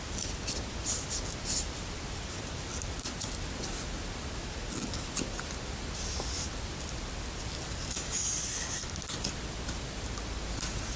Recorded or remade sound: recorded